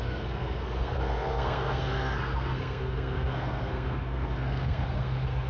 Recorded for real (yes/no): no